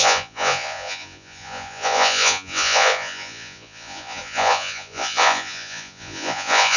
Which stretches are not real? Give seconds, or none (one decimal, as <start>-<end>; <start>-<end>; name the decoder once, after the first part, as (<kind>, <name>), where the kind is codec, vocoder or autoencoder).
0.0-6.8 (vocoder, Vocos)